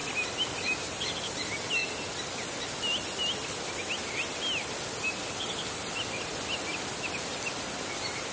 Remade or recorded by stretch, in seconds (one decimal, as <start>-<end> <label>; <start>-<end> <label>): 0.0-8.3 recorded